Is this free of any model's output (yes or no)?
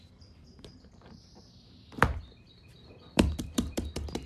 no